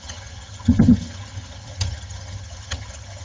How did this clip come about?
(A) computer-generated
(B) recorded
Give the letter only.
A